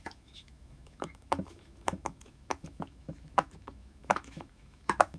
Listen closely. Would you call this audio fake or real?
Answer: fake